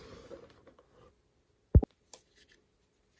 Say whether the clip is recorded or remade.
recorded